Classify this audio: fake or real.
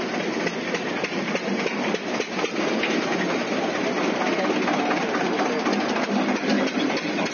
real